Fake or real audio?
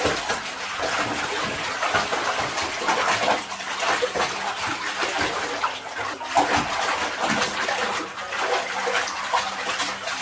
real